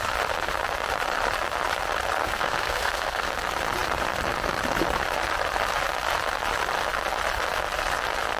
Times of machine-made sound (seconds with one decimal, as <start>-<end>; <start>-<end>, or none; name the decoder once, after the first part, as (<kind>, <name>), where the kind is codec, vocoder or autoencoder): 2.2-3.3 (codec, SNAC)